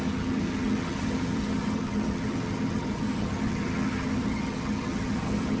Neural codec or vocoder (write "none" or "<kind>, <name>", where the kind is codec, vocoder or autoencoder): vocoder, HiFi-GAN